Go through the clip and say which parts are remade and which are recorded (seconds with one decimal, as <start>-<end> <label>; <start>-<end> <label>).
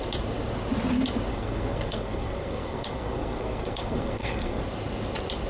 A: 0.0-1.3 recorded; 1.3-4.6 remade; 4.6-5.5 recorded